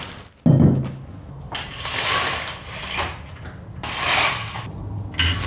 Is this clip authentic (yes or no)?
yes